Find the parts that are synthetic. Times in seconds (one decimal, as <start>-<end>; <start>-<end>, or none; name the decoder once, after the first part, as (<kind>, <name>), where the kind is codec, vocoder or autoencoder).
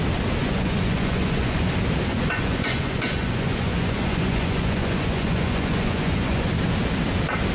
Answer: 0.4-1.7 (vocoder, Vocos); 2.1-6.5